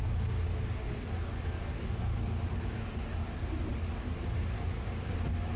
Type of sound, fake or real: real